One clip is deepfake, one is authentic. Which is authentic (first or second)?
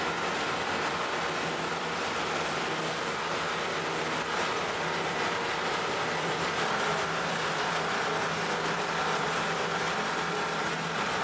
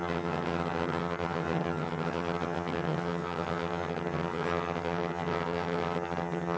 first